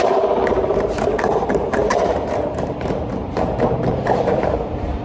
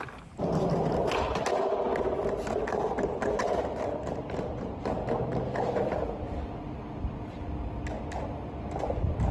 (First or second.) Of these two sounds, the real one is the second